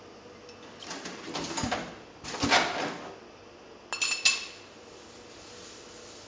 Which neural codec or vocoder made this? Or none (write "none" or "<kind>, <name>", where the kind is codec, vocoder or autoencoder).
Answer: none